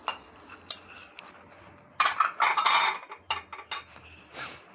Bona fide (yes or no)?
yes